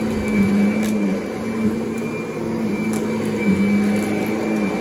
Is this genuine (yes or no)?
yes